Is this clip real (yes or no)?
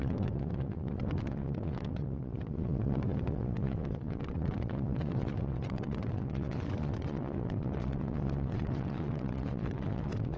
no